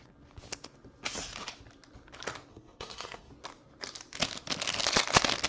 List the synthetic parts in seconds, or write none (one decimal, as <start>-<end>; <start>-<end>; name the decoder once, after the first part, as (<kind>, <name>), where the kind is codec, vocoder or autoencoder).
2.5-3.3 (codec, SNAC)